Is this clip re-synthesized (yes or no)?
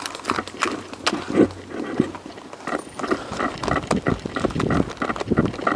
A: no